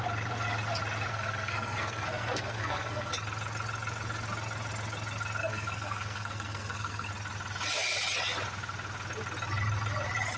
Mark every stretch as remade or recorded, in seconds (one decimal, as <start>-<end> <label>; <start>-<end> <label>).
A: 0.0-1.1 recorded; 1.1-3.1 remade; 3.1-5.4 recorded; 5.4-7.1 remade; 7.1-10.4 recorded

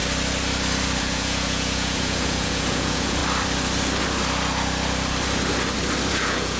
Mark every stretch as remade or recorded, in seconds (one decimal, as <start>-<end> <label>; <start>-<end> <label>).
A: 0.0-1.0 recorded; 1.0-3.2 remade; 3.2-6.1 recorded; 6.1-6.6 remade

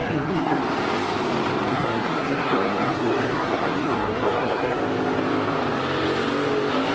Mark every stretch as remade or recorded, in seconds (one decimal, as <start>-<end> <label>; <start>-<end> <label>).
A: 0.0-0.6 remade; 0.6-1.7 recorded; 1.7-4.8 remade; 4.8-6.9 recorded

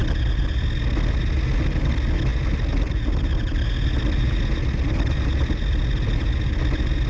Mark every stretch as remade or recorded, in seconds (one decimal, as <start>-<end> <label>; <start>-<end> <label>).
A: 0.0-7.1 recorded

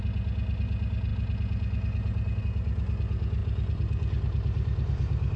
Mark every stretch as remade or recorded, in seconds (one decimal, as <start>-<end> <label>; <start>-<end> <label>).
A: 0.0-3.4 recorded; 3.4-5.4 remade

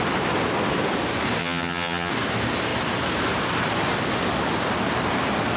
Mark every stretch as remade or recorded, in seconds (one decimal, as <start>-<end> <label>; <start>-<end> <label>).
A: 0.0-1.4 recorded; 1.4-2.1 remade; 2.1-5.6 recorded

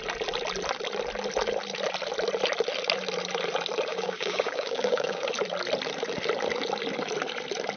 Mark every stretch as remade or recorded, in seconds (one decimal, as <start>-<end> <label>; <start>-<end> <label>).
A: 0.0-3.9 recorded; 3.9-5.3 remade; 5.3-7.8 recorded

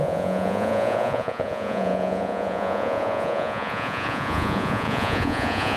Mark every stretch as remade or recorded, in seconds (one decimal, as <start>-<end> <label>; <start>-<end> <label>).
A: 0.0-5.8 remade